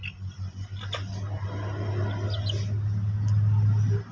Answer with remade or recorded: recorded